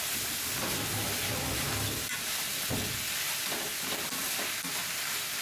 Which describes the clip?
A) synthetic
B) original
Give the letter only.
B